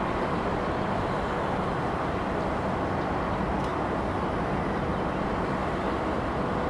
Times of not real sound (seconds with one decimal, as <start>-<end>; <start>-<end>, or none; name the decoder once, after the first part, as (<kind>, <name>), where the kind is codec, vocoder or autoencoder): none